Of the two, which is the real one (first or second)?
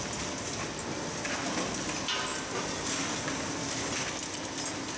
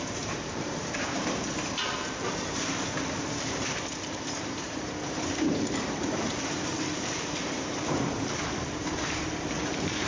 first